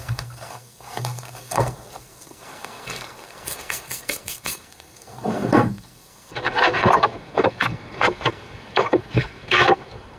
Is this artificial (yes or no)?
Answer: yes